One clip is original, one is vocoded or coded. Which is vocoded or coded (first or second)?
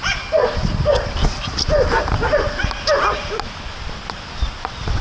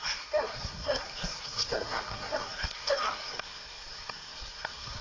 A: second